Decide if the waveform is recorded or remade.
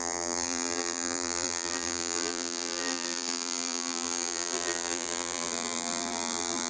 remade